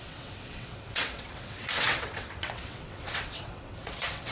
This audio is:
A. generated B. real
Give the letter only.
A